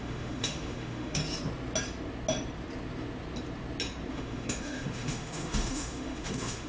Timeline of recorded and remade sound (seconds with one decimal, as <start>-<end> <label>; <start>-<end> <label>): 0.0-1.2 remade; 1.2-4.1 recorded; 4.1-6.7 remade